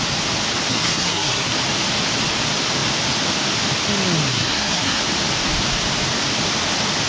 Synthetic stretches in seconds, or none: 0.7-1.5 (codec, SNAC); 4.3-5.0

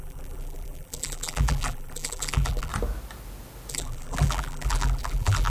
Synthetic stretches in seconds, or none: 0.0-2.7 (vocoder, BigVGAN v2); 3.7-5.5

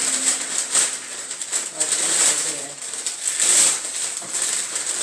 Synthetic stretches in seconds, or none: 0.0-3.0 (vocoder, BigVGAN v2)